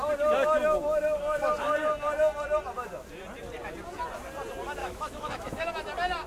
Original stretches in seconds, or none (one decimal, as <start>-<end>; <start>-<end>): 0.0-4.8; 5.7-6.3